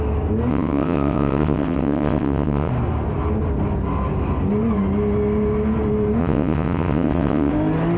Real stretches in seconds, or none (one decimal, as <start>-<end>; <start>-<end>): 0.0-0.5; 2.7-6.2; 7.5-8.0